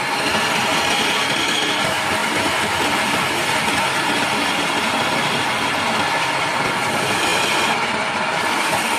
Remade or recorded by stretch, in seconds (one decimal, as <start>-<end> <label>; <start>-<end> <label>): 0.0-2.2 recorded; 2.2-6.6 remade; 6.6-7.3 recorded; 7.3-9.0 remade